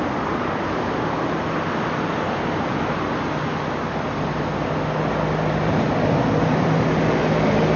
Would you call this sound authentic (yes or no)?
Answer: yes